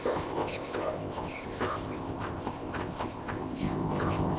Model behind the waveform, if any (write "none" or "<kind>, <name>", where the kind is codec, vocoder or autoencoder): codec, ZipCodec